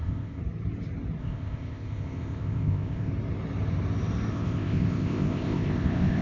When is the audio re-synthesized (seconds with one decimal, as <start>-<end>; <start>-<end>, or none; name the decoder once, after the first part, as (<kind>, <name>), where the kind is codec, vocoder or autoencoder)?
0.0-0.4 (codec, ZipCodec); 1.2-3.1; 4.3-6.2